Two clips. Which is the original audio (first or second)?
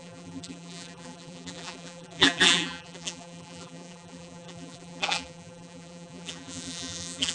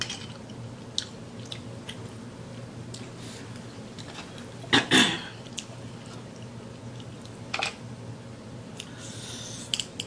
second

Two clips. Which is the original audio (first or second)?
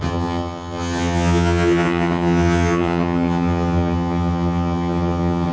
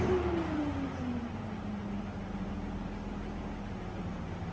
second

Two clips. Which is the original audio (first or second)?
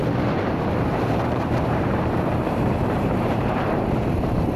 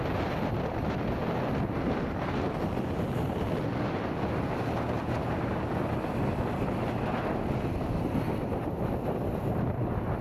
second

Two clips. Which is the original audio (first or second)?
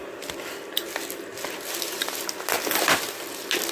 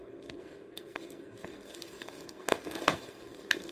first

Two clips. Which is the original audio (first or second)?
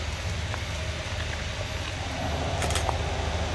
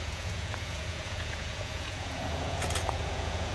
first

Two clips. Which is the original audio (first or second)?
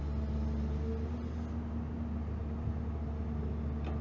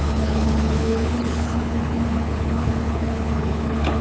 first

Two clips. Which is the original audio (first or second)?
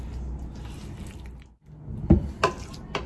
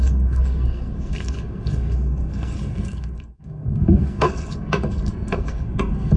first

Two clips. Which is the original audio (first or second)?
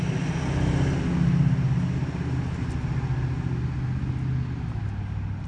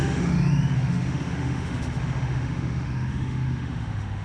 first